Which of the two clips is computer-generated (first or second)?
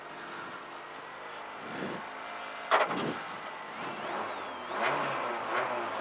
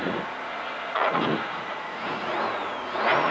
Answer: second